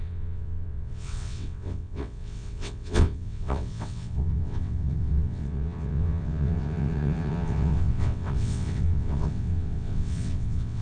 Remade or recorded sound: remade